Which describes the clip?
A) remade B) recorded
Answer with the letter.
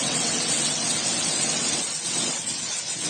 A